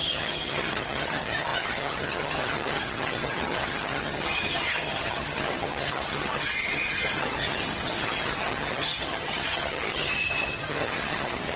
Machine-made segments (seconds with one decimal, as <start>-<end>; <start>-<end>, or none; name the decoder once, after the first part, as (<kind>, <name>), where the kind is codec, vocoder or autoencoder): 0.0-11.6 (vocoder, HiFi-GAN)